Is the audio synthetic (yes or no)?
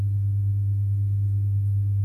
no